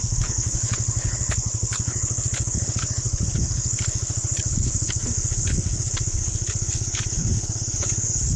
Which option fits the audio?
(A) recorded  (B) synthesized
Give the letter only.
B